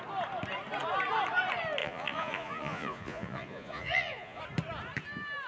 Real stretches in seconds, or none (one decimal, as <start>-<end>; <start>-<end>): 0.0-1.8; 4.4-5.5